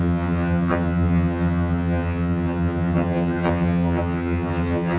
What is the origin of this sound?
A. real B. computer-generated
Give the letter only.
B